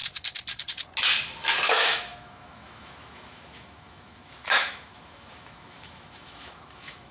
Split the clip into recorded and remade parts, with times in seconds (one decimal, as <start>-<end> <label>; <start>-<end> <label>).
0.0-1.5 recorded; 1.5-7.1 remade